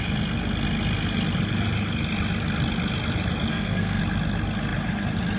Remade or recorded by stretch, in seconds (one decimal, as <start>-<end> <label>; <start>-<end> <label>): 0.0-3.5 recorded; 3.5-4.0 remade; 4.0-5.4 recorded